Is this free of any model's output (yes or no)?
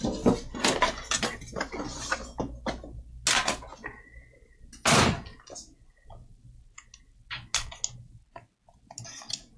yes